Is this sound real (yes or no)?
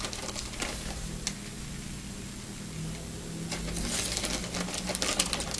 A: yes